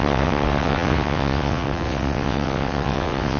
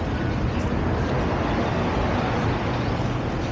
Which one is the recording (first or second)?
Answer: second